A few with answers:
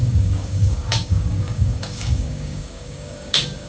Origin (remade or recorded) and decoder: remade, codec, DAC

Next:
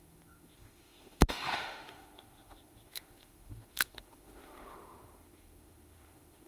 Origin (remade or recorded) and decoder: remade, autoencoder, DAC-VAE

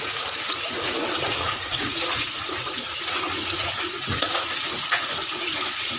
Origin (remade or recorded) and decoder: remade, vocoder, Vocos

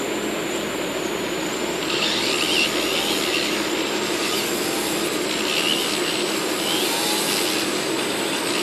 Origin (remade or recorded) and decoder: recorded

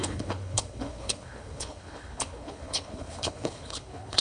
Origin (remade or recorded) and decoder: remade, codec, HILCodec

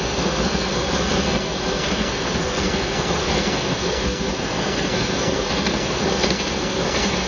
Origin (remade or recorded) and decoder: remade, codec, SNAC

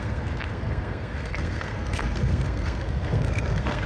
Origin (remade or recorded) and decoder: remade, codec, SNAC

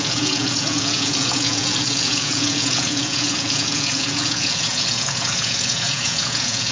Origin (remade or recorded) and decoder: remade, vocoder, Vocos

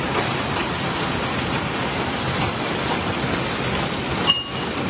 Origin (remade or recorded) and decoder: recorded